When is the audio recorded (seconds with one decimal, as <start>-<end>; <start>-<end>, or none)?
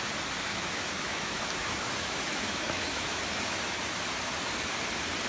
0.0-0.5; 3.7-5.3